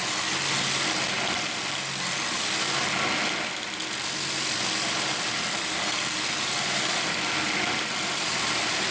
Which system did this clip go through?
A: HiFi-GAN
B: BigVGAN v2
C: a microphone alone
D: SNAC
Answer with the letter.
C